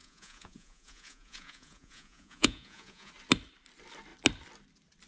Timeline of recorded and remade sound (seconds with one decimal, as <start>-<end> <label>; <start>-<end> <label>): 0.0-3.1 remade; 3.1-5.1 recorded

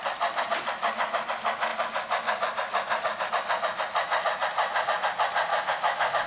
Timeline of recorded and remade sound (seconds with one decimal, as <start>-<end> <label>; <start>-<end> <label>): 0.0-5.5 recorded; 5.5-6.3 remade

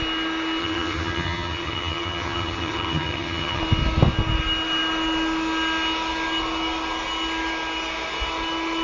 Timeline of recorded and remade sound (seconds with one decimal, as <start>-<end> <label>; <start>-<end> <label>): 0.0-0.6 recorded; 0.6-3.6 remade; 3.6-8.8 recorded

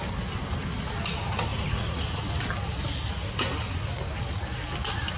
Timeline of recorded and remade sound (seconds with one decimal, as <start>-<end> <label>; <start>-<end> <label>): 0.0-1.5 recorded; 1.5-2.0 remade; 2.0-5.2 recorded

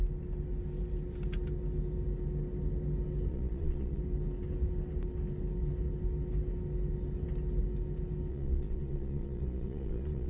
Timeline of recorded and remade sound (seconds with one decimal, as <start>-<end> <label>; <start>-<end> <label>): 0.0-3.3 recorded; 3.3-4.0 remade; 4.0-8.3 recorded; 8.3-10.3 remade